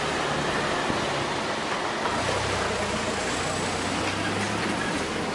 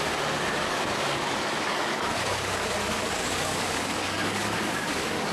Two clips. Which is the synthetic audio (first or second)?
second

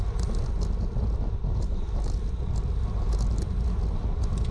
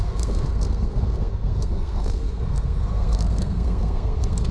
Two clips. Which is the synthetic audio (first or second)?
second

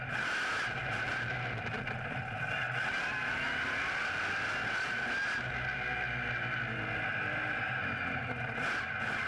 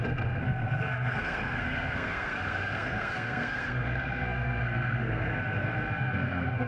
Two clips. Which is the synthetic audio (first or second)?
second